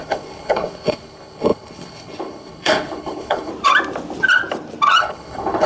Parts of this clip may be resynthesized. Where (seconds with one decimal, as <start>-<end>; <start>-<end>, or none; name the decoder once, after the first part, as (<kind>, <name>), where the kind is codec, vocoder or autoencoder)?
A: 0.0-3.5 (codec, HILCodec); 5.0-5.7